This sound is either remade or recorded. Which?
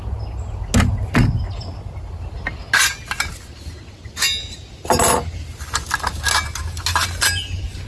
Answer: recorded